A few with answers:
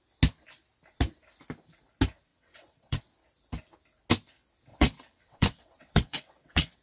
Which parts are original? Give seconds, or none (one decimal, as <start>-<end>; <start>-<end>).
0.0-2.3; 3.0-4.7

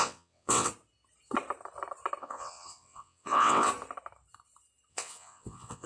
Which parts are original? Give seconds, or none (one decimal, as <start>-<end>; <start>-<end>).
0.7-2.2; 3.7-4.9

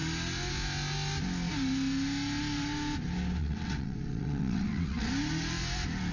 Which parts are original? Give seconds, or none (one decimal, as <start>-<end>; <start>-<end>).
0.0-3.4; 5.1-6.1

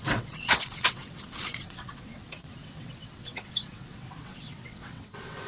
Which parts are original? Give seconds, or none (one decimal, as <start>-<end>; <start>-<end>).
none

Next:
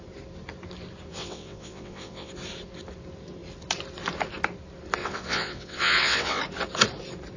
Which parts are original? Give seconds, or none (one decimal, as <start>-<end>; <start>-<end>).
0.0-1.1; 2.3-5.0; 6.4-7.4

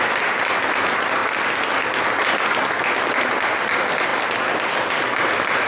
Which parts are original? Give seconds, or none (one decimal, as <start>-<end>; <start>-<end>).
0.0-5.7